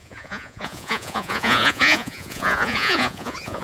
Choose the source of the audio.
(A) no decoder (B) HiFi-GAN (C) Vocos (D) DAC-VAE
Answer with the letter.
C